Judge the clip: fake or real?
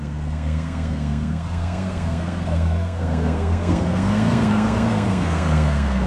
fake